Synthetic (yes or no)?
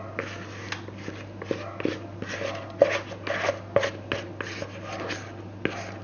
no